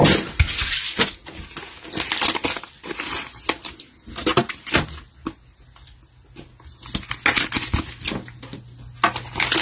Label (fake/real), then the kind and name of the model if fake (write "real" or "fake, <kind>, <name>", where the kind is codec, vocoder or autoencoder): real